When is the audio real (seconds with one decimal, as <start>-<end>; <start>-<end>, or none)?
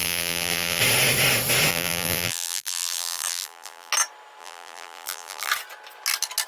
0.8-1.7; 3.9-4.4; 5.5-6.5